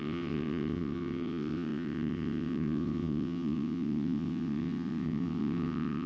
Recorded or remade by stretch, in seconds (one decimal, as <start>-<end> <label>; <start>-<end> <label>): 0.0-6.1 remade